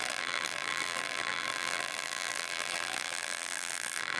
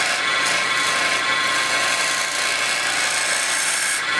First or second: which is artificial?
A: first